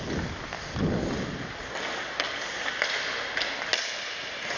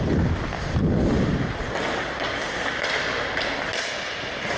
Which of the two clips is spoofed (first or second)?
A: second